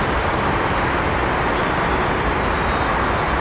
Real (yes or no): yes